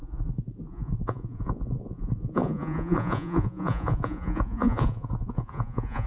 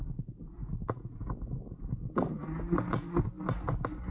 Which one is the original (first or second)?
second